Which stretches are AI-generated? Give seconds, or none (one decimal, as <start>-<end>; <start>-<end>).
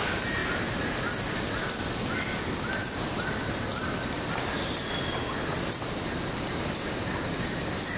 none